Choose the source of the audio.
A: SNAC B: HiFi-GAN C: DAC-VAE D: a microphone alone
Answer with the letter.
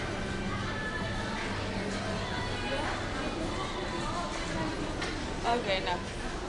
D